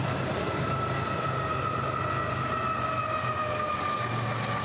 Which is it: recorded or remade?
recorded